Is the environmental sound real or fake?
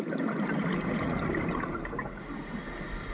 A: real